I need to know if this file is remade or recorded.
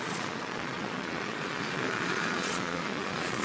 remade